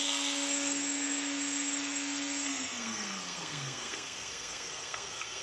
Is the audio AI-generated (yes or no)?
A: yes